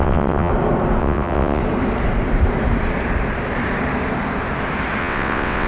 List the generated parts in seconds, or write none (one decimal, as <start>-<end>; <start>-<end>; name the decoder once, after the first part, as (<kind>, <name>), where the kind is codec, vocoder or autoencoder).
0.0-0.5 (vocoder, WaveNeXt); 1.0-1.6; 5.0-5.7